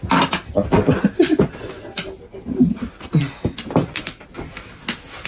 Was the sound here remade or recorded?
recorded